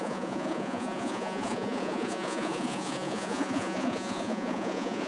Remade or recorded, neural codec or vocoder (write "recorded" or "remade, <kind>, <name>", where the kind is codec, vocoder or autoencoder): remade, vocoder, Vocos